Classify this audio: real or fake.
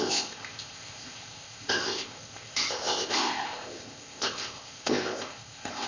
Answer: fake